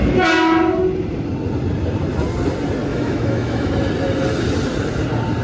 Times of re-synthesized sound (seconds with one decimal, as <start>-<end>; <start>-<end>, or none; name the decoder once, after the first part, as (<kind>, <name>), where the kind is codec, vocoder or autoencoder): 2.9-3.7 (autoencoder, DAC-VAE)